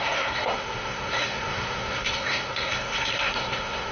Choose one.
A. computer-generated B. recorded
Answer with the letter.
A